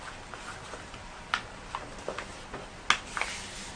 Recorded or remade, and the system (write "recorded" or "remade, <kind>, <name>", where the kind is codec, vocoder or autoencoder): recorded